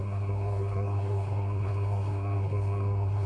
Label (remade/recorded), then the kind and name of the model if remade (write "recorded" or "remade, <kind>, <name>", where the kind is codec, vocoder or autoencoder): remade, codec, SNAC